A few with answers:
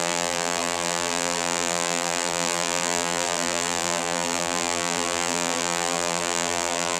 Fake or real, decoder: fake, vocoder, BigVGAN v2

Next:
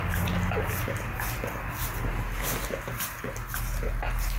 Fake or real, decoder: real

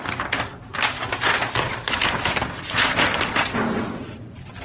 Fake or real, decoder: real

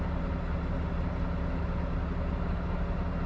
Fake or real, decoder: real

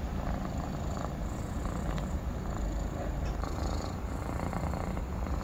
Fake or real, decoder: fake, vocoder, BigVGAN v2